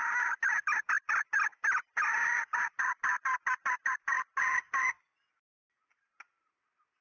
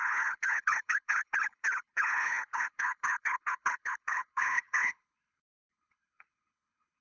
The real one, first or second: first